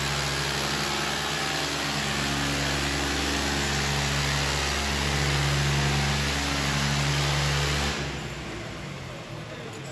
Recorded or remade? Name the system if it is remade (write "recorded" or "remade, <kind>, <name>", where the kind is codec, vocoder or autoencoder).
recorded